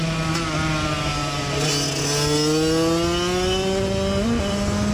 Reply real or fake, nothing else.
real